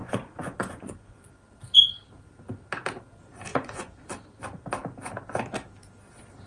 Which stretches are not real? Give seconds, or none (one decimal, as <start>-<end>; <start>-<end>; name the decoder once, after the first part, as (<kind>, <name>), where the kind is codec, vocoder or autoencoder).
0.0-1.3 (vocoder, Vocos); 3.5-4.7